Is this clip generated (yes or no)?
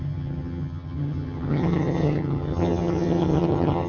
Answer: yes